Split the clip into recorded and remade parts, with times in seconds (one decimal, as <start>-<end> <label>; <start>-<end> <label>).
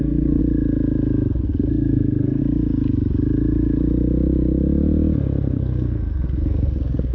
0.0-0.4 remade; 0.4-1.4 recorded; 1.4-2.4 remade; 2.4-5.5 recorded; 5.5-7.1 remade